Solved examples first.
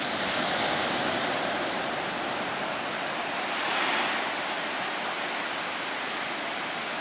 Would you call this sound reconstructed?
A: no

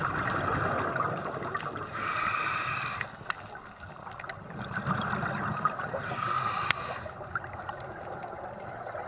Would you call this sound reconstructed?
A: no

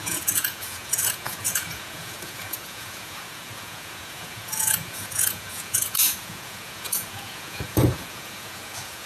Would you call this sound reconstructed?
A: yes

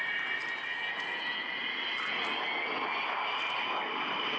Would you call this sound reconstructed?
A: no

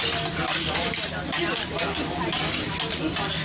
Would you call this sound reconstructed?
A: no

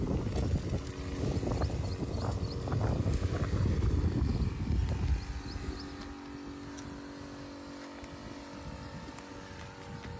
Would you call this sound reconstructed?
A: no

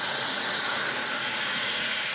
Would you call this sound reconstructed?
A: yes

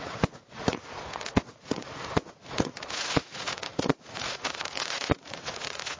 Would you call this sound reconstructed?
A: yes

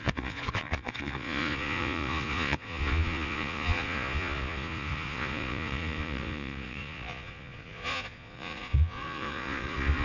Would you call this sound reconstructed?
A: yes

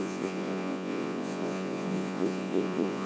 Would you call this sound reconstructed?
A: yes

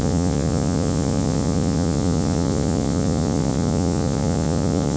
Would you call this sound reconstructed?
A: yes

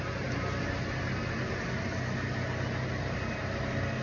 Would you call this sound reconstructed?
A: no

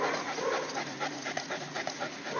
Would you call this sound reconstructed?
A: yes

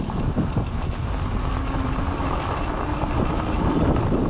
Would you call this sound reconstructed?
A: no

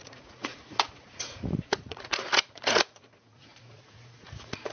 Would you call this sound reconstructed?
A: yes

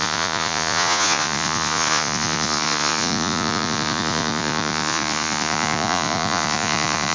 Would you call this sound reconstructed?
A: yes